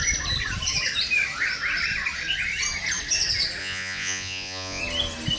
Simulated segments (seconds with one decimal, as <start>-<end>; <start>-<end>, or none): 3.6-4.8